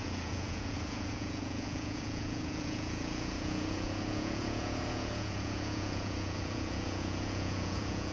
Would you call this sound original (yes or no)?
no